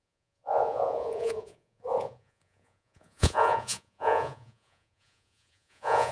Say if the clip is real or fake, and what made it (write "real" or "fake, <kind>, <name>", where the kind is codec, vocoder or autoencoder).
fake, vocoder, Vocos